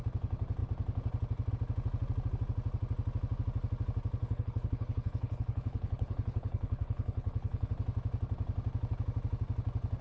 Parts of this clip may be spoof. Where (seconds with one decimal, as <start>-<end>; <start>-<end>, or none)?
4.2-7.7